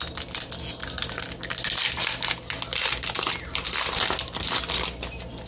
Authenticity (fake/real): real